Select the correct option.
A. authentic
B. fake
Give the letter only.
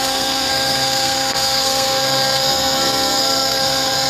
B